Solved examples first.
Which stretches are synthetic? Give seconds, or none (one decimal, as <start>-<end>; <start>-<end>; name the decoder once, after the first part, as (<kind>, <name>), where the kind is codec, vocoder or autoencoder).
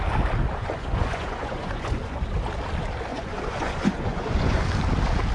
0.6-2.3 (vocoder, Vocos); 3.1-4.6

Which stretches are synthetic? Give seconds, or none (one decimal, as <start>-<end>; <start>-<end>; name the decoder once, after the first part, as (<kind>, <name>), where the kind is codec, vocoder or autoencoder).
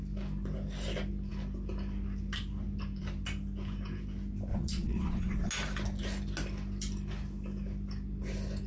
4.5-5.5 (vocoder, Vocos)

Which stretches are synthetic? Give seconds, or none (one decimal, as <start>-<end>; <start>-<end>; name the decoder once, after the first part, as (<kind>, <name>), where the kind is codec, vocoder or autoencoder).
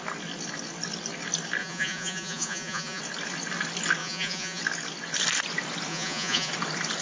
1.6-3.0 (vocoder, Vocos); 4.0-4.6; 5.9-6.5